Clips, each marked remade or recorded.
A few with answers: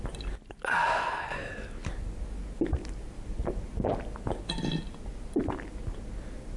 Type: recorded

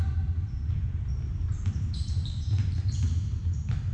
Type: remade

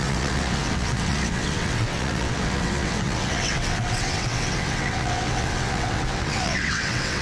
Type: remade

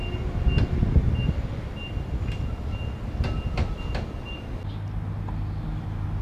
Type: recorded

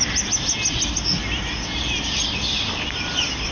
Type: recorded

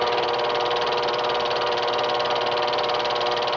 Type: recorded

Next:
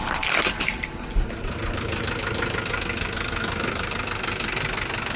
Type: recorded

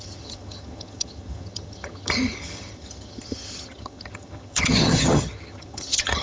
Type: remade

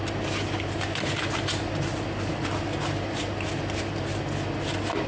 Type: recorded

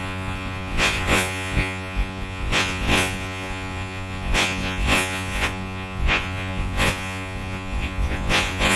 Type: remade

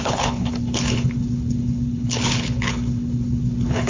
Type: remade